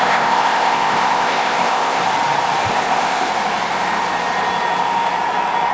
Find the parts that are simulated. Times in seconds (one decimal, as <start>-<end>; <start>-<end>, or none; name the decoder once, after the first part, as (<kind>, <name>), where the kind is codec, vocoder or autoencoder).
0.0-2.0 (codec, ZipCodec); 2.7-3.3